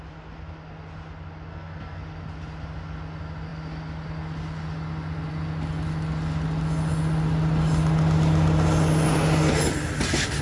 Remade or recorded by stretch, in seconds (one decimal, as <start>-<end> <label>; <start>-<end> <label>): 0.0-1.5 recorded; 1.5-2.0 remade; 2.0-10.4 recorded